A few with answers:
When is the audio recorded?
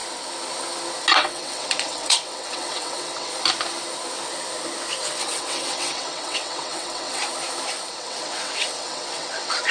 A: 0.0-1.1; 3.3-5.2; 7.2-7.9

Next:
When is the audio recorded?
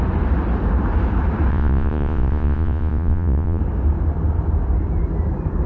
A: 0.0-1.5; 3.6-5.7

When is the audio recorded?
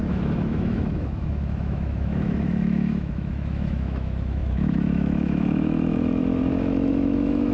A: none